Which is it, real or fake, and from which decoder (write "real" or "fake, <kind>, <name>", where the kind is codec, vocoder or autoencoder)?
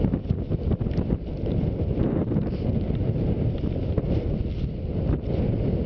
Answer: real